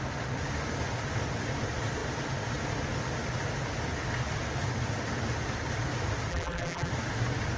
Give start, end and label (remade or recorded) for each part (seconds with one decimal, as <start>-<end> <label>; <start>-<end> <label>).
0.0-6.3 recorded; 6.3-6.9 remade; 6.9-7.6 recorded

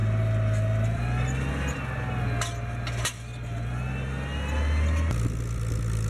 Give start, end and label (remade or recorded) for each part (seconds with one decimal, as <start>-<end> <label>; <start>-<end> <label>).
0.0-1.5 remade; 1.5-6.1 recorded

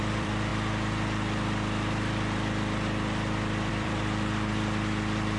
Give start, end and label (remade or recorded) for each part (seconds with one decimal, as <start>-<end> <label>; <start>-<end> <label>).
0.0-0.5 remade; 0.5-3.7 recorded; 3.7-5.4 remade

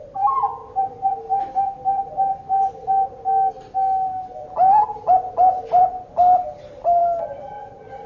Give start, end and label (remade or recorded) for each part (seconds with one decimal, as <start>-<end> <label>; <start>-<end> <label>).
0.0-0.6 recorded; 0.6-1.5 remade; 1.5-8.1 recorded

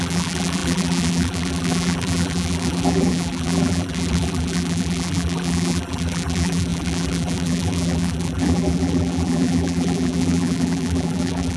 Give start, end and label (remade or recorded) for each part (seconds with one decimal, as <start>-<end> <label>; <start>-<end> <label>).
0.0-11.6 remade

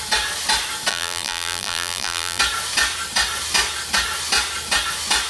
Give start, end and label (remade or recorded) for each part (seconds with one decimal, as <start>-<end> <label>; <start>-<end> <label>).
0.0-0.9 recorded; 0.9-2.4 remade; 2.4-5.3 recorded

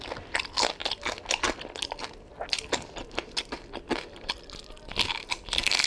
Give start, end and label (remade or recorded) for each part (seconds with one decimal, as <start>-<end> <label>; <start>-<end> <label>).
0.0-5.9 recorded